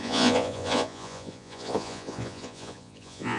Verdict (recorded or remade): remade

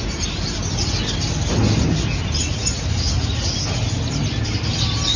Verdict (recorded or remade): recorded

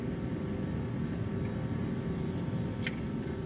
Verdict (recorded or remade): recorded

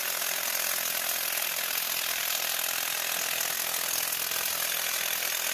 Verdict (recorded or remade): recorded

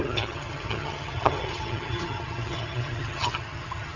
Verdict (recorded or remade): remade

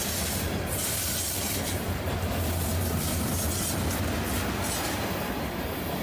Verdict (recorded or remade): recorded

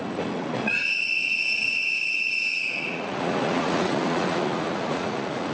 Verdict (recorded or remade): remade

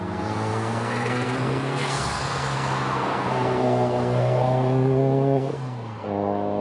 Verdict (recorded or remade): remade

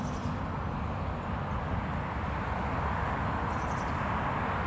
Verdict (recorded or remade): recorded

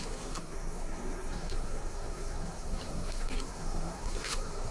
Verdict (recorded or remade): remade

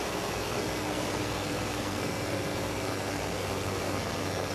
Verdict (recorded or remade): remade